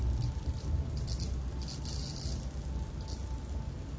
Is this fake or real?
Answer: real